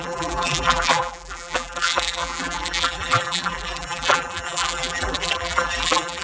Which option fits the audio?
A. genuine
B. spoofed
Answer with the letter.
B